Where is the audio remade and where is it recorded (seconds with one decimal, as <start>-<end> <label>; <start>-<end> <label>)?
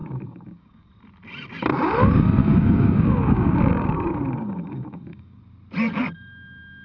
0.0-0.9 remade; 0.9-2.4 recorded; 2.4-5.4 remade; 5.4-6.8 recorded